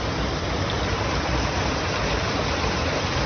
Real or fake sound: real